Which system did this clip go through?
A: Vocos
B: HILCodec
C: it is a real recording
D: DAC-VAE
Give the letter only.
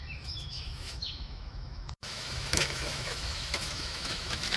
D